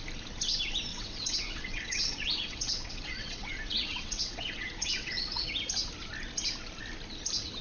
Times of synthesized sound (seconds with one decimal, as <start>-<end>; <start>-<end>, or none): 0.9-5.5